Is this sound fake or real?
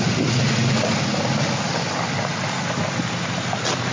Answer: real